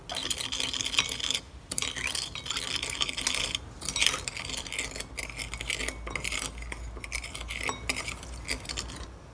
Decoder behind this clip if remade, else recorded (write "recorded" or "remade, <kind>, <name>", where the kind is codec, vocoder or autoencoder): recorded